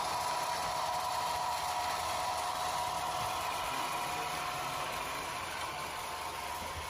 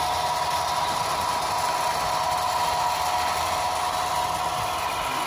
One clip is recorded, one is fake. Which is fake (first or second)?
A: first